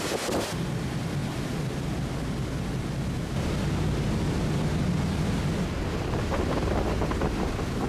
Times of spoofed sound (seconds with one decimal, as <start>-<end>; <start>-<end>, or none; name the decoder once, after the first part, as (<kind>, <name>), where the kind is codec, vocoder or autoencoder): none